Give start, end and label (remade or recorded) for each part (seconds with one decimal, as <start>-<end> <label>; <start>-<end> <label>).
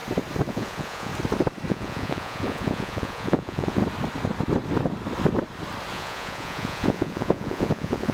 0.0-0.5 recorded; 0.5-1.1 remade; 1.1-1.7 recorded; 1.7-3.8 remade; 3.8-5.9 recorded; 5.9-8.1 remade